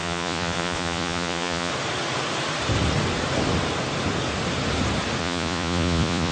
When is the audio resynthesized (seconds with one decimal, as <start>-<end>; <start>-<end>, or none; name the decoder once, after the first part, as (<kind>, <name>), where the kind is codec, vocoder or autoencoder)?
0.0-1.7 (vocoder, Vocos); 5.2-6.3